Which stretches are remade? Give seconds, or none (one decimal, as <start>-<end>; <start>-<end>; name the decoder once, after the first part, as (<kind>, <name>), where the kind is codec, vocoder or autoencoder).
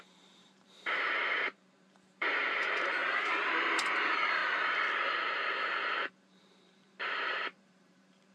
0.0-4.4 (vocoder, BigVGAN v2); 6.1-8.3